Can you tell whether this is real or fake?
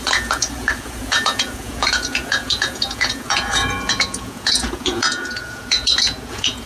fake